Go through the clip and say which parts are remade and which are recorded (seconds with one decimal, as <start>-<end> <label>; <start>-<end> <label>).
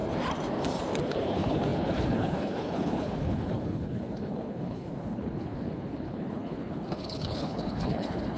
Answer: 0.0-1.0 recorded; 1.0-8.4 remade